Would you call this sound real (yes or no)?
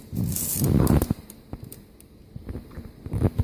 yes